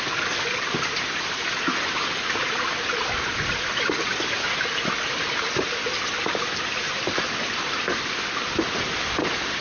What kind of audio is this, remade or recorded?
recorded